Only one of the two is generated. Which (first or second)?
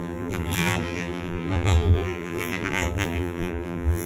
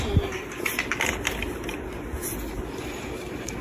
first